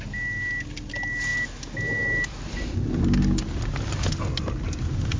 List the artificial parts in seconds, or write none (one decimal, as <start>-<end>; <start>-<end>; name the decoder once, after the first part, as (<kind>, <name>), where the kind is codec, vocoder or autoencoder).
none

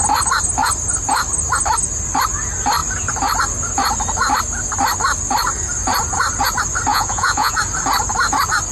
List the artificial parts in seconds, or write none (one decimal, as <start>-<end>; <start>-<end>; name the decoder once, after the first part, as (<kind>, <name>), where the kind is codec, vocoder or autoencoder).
6.9-7.5 (vocoder, Vocos)

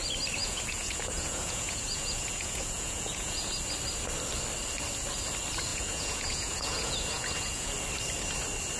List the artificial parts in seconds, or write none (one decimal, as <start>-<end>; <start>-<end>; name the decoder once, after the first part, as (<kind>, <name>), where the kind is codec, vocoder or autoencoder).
0.4-3.5 (vocoder, Vocos); 5.7-7.7

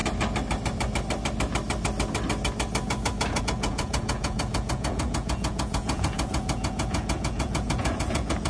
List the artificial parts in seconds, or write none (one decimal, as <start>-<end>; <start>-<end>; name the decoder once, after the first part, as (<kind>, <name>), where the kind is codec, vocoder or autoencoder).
3.4-8.5 (vocoder, Vocos)

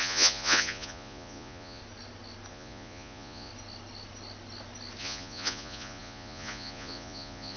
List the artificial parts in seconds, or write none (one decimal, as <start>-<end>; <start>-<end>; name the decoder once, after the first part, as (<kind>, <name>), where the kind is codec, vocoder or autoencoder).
0.0-1.8 (vocoder, Vocos); 2.5-3.5; 5.0-7.6

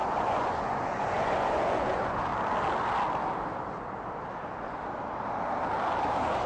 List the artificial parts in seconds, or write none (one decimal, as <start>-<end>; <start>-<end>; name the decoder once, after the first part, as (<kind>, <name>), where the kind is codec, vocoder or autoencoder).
0.0-2.3 (vocoder, Vocos)

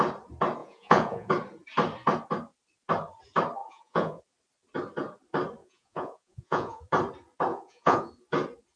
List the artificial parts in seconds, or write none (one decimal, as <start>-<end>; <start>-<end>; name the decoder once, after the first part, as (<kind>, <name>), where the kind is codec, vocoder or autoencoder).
0.6-1.3 (vocoder, Vocos); 3.6-4.2; 5.6-6.8; 7.5-8.1